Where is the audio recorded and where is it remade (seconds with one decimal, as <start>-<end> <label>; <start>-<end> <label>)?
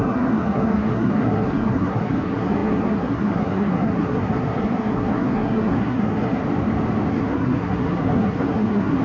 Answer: 0.0-6.4 remade; 6.4-7.1 recorded; 7.1-9.0 remade